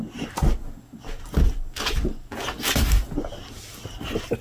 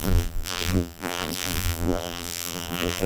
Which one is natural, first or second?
first